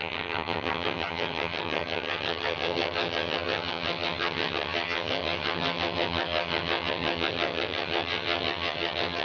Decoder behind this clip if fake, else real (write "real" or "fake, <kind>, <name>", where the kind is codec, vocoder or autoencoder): fake, vocoder, HiFi-GAN